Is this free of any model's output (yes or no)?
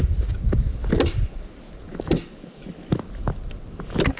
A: yes